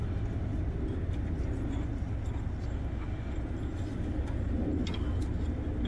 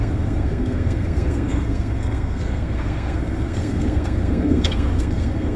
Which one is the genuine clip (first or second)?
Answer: first